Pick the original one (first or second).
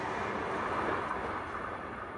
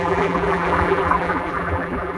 first